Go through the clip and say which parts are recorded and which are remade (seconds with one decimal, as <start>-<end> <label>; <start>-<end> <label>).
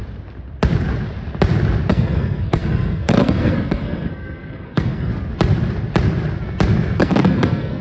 0.0-1.9 recorded; 1.9-5.1 remade; 5.1-7.0 recorded; 7.0-7.8 remade